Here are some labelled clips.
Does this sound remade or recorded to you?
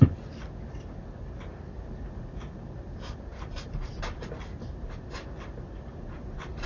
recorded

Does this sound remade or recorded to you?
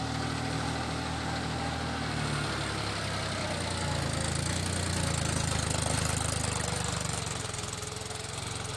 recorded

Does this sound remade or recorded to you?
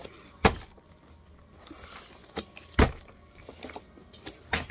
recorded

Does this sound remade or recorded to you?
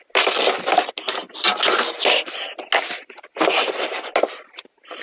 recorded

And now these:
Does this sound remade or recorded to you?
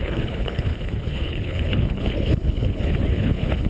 remade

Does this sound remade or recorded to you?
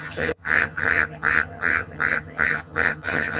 remade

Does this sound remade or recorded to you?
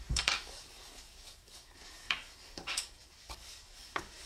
remade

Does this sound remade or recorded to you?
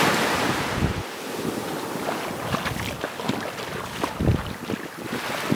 recorded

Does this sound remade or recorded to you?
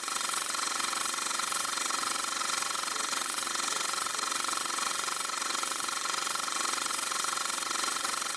remade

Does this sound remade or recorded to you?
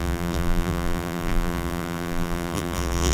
remade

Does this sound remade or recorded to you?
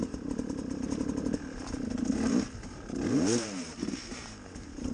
remade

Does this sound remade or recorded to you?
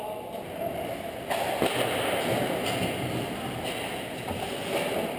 recorded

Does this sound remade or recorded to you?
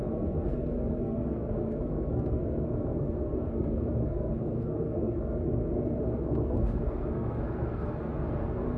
remade